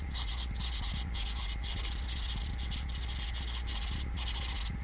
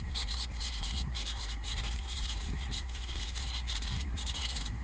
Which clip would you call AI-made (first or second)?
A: second